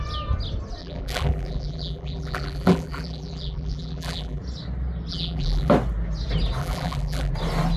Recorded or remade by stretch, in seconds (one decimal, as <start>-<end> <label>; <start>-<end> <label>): 0.0-0.8 recorded; 0.8-4.4 remade; 4.4-5.1 recorded; 5.1-5.7 remade; 5.7-6.6 recorded; 6.6-7.3 remade; 7.3-7.8 recorded